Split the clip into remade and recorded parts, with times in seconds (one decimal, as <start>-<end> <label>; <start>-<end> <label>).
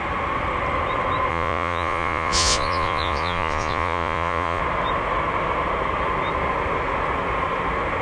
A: 0.0-1.3 recorded; 1.3-4.6 remade; 4.6-8.0 recorded